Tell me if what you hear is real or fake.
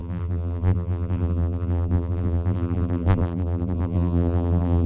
fake